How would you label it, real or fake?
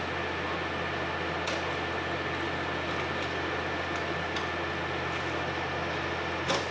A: real